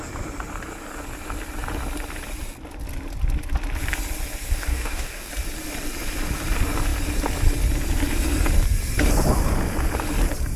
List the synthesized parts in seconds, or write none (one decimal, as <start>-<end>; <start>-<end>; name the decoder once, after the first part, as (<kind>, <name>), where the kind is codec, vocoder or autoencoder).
4.7-5.3 (codec, DAC)